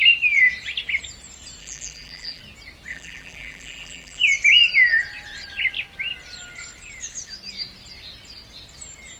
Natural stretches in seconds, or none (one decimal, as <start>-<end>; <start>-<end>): 0.0-1.6; 2.4-2.9; 4.2-9.2

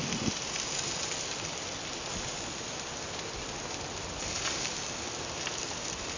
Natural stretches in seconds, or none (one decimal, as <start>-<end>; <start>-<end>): 0.0-3.0

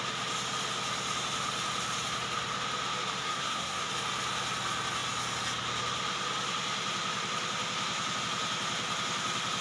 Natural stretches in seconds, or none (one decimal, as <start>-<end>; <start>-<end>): 0.0-3.2; 3.9-9.6

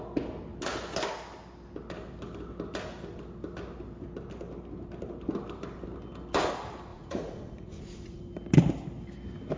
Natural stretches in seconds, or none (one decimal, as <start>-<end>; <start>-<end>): 0.0-6.9; 8.2-9.6

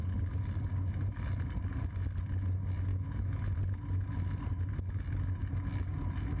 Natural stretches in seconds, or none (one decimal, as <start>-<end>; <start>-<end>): 0.0-2.9; 3.5-6.4

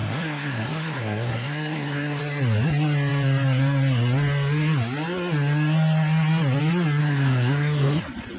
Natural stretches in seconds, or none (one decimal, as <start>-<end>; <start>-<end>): 2.2-7.0; 8.0-8.4

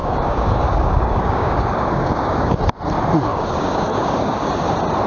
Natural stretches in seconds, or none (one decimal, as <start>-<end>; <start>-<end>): 2.6-3.3; 4.5-5.1